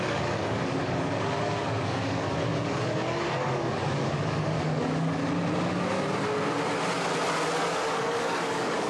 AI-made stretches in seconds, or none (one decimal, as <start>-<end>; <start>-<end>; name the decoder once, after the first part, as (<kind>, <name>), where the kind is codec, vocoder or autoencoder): 0.0-5.2 (codec, DAC); 7.7-8.9